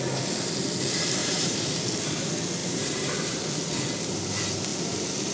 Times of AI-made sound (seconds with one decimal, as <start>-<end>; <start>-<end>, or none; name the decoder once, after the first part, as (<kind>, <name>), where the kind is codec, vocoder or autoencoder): 1.2-1.7 (vocoder, BigVGAN v2); 2.6-3.4